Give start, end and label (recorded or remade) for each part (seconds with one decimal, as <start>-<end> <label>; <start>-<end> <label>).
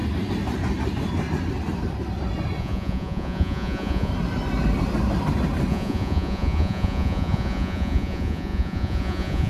0.0-2.6 recorded; 2.6-4.1 remade; 4.1-5.7 recorded; 5.7-9.5 remade